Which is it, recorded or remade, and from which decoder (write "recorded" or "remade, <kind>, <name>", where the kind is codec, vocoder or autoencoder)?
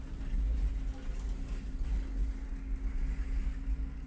recorded